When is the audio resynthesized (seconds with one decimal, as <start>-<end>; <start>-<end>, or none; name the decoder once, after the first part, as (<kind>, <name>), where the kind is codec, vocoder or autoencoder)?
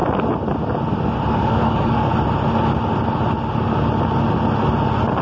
1.3-2.1 (codec, DAC)